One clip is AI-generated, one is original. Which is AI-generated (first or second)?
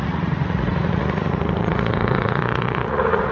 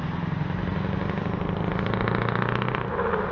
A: first